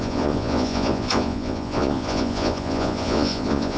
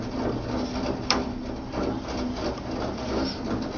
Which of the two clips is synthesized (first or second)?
first